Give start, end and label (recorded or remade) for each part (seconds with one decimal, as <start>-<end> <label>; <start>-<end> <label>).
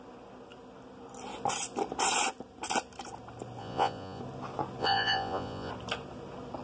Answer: 0.0-3.6 recorded; 3.6-4.2 remade; 4.2-4.8 recorded; 4.8-5.7 remade; 5.7-6.6 recorded